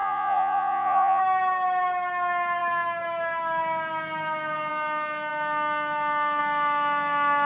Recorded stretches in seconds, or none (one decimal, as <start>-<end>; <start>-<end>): 1.2-7.5

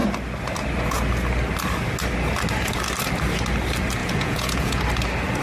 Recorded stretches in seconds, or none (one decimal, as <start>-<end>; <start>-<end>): 0.0-4.0; 4.8-5.4

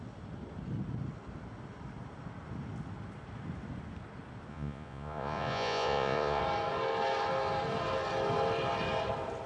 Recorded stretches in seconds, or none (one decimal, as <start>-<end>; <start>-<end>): 0.0-4.5; 6.4-9.5

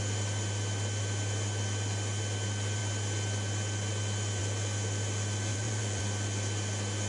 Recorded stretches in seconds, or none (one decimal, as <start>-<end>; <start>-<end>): 0.0-5.5; 6.0-7.1